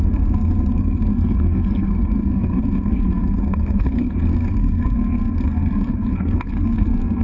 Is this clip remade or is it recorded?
remade